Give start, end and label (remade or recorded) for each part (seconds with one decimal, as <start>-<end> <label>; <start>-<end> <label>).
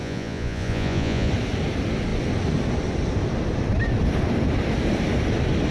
0.0-1.3 remade; 1.3-5.7 recorded